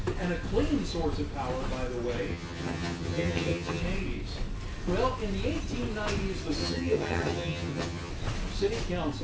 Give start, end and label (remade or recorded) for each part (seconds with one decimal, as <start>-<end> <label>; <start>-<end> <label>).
0.0-2.3 recorded; 2.3-3.8 remade; 3.8-6.6 recorded; 6.6-8.1 remade; 8.1-9.2 recorded